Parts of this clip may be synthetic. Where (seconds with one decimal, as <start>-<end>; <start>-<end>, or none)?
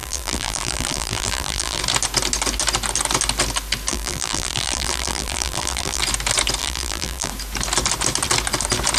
0.0-1.8; 3.9-6.0; 6.6-7.3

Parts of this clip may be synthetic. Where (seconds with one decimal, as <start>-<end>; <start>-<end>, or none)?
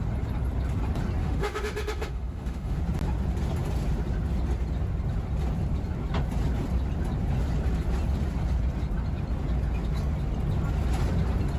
1.2-2.8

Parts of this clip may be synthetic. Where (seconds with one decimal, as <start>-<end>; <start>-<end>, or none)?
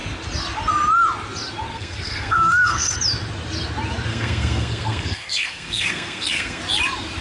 1.7-2.9; 4.1-6.6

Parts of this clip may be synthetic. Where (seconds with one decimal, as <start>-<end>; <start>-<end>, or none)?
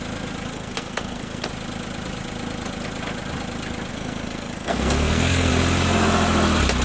0.5-1.5; 3.9-5.5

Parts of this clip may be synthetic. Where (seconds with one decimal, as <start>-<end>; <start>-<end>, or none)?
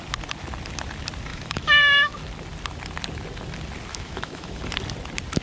1.3-2.2; 3.9-4.6